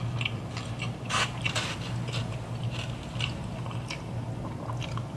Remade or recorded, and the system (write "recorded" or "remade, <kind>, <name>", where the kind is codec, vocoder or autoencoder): recorded